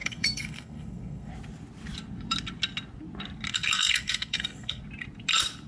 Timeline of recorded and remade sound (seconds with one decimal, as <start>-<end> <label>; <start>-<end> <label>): 0.0-1.3 remade; 1.3-3.5 recorded; 3.5-4.8 remade; 4.8-5.7 recorded